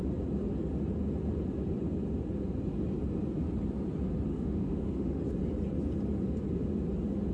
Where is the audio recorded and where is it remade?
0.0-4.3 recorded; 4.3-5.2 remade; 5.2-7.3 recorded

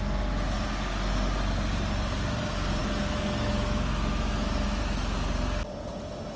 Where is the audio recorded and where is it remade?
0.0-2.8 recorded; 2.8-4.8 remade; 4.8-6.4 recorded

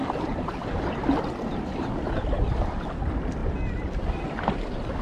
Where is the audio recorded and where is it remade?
0.0-5.0 recorded

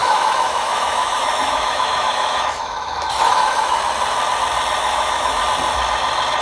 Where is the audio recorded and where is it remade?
0.0-3.8 remade; 3.8-4.8 recorded; 4.8-5.4 remade; 5.4-6.4 recorded